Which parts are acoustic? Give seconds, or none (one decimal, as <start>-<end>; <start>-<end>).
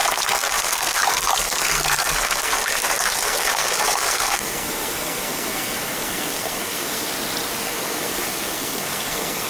7.1-7.6